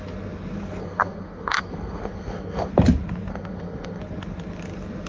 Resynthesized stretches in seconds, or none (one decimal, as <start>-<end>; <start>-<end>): 0.8-2.7; 3.3-4.0